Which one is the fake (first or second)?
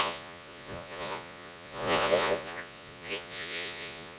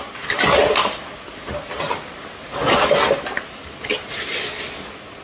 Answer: first